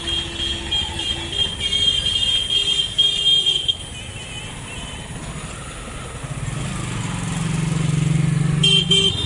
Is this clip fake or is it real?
real